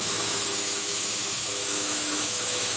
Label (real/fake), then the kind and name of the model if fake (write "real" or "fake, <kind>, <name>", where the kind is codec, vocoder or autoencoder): fake, autoencoder, DAC-VAE